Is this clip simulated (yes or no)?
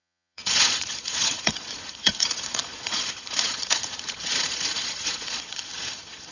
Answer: yes